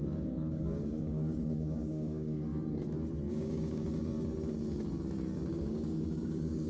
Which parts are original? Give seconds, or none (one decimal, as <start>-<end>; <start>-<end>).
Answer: 2.5-3.3; 4.1-5.5

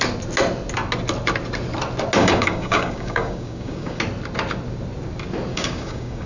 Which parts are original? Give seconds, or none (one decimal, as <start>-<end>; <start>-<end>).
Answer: 0.0-2.2; 4.0-5.5

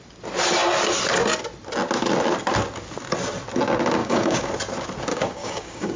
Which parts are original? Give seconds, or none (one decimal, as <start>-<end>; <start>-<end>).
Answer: 0.0-4.0; 4.5-5.1

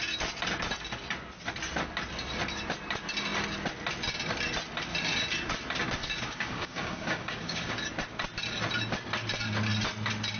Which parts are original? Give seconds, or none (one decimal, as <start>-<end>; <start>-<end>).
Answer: 0.0-6.0; 7.8-10.4

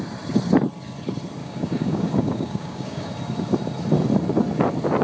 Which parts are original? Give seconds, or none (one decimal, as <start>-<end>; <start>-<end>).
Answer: 0.0-1.4; 3.1-5.0

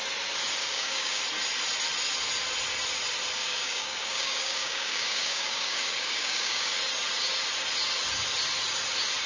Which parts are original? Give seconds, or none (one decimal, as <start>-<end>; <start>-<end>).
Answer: 0.0-0.6; 1.2-3.4; 6.7-9.3

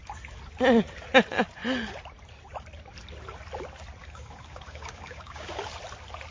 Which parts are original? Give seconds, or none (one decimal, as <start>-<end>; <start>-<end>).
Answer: 0.0-4.0; 5.6-6.3